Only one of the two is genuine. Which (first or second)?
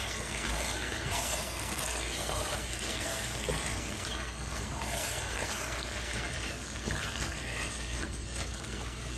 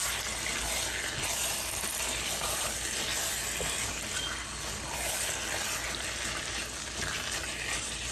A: second